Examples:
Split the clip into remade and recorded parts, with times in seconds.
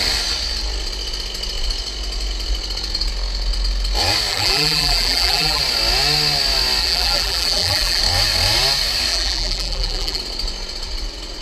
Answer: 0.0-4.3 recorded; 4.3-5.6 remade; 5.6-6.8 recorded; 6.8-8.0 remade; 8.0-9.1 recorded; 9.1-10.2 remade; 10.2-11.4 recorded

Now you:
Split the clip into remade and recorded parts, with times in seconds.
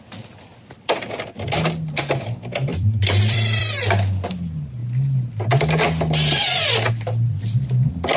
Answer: 0.0-2.7 recorded; 2.7-3.9 remade; 3.9-8.2 recorded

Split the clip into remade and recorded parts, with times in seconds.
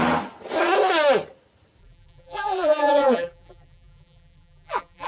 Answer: 0.0-1.8 recorded; 1.8-5.1 remade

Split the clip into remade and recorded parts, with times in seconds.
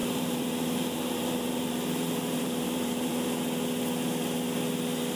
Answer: 0.0-3.1 remade; 3.1-5.2 recorded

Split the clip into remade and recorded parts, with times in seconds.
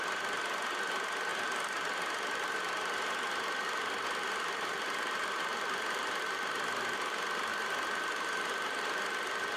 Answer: 0.0-1.3 recorded; 1.3-6.2 remade; 6.2-7.5 recorded; 7.5-8.8 remade; 8.8-9.6 recorded